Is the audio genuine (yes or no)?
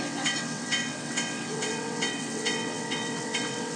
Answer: no